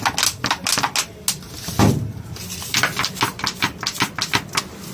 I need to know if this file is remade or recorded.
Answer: recorded